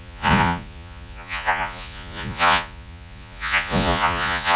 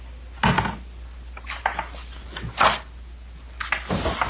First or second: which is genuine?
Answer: second